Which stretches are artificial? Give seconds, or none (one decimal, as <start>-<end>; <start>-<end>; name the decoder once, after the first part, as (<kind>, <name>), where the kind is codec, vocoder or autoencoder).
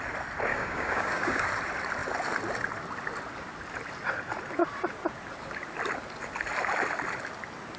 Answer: 0.5-1.5 (codec, DAC)